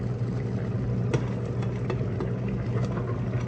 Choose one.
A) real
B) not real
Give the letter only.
A